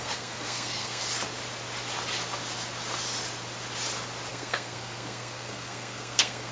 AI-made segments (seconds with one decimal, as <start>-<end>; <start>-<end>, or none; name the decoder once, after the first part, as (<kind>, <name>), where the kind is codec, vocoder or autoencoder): 0.0-1.0 (codec, SNAC); 4.3-6.5